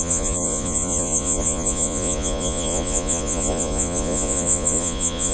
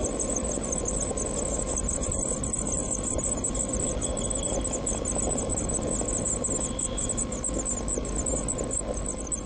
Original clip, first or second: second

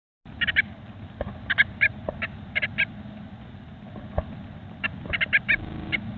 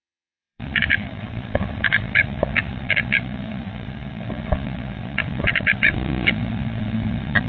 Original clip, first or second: first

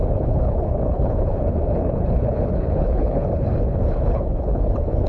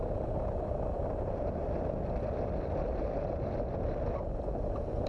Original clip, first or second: second